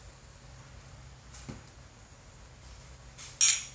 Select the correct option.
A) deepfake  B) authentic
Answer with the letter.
B